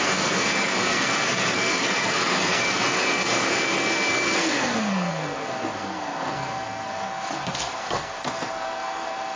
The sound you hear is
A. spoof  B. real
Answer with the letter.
A